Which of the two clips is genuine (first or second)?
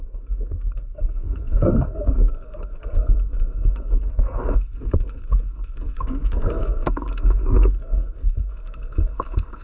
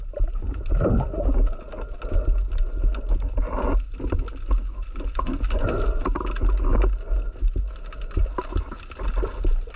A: second